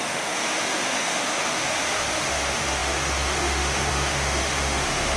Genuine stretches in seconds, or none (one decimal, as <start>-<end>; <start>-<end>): none